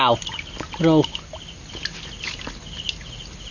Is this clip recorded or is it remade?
recorded